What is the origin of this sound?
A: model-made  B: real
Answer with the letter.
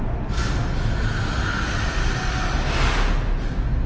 B